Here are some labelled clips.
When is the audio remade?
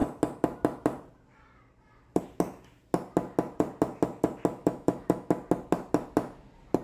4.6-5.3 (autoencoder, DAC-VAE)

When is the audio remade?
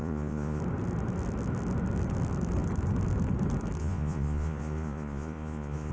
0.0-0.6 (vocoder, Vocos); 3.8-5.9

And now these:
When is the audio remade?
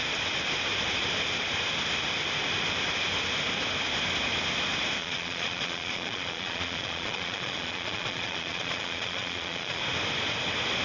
5.0-9.8 (vocoder, Vocos)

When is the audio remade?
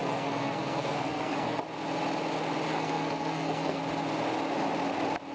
0.0-1.6 (codec, SNAC); 2.7-3.8